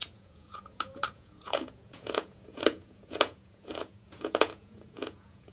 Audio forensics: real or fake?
fake